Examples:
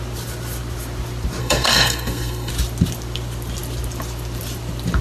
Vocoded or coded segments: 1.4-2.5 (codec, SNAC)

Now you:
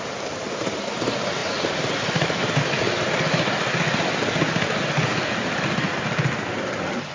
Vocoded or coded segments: none

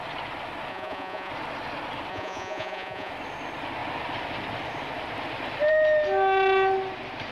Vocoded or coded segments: 0.7-1.3 (vocoder, Vocos); 2.1-3.1